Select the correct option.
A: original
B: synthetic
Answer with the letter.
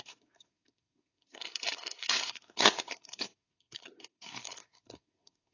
B